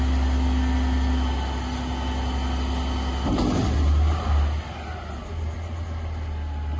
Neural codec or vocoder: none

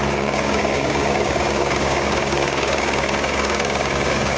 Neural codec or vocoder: codec, DAC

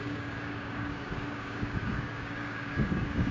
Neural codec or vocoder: codec, DAC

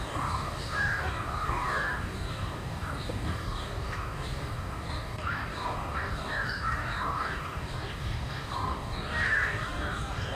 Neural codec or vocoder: codec, DAC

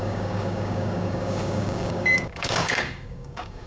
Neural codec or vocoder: codec, DAC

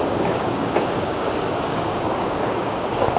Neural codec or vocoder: codec, DAC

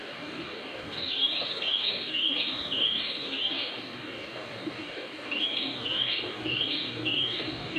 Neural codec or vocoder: codec, DAC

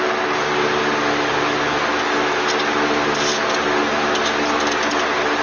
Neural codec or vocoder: none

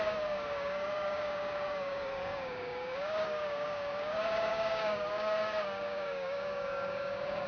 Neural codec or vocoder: codec, DAC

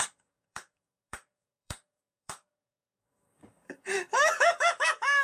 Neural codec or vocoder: codec, DAC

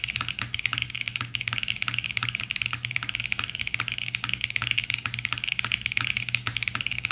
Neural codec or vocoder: codec, DAC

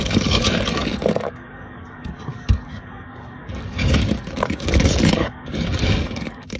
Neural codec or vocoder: codec, DAC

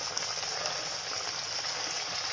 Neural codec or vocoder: none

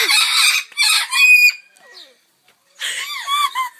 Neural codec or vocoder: none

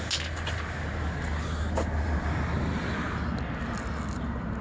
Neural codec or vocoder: none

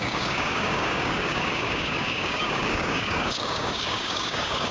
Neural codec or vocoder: codec, DAC